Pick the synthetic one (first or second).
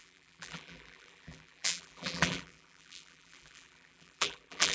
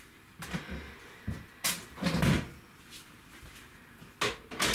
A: first